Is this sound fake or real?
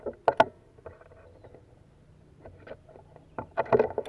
real